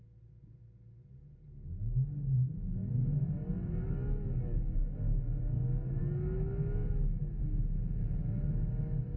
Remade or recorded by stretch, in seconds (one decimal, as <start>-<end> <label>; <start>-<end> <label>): 0.0-9.2 recorded